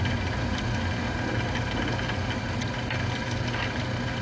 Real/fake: real